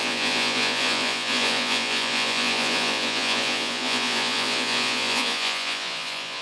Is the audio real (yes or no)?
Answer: no